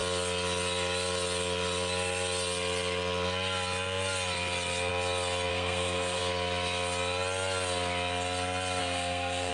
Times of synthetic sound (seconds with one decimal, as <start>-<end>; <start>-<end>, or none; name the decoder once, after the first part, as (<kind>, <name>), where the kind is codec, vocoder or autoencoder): 5.5-6.2 (codec, SNAC); 8.8-9.5